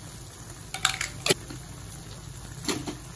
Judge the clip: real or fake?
real